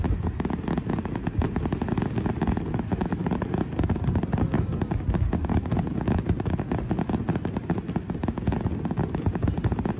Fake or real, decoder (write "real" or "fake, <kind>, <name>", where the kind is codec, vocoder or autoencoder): real